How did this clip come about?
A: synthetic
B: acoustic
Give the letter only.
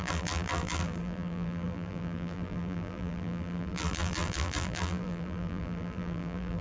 A